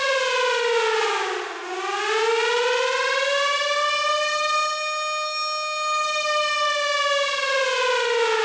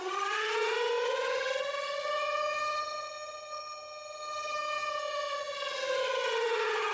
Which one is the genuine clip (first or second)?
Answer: first